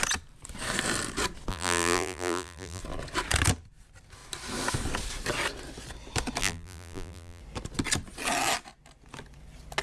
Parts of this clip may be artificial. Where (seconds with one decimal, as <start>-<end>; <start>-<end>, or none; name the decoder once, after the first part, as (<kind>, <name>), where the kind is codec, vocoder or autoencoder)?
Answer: 1.5-2.8 (vocoder, BigVGAN v2); 6.4-7.4